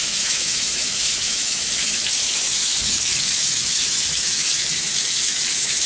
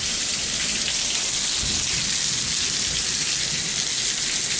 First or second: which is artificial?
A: first